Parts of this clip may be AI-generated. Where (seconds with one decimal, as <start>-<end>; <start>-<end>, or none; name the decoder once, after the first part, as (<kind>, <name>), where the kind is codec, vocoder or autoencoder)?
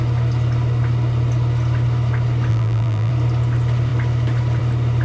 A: 2.5-3.1 (vocoder, BigVGAN v2)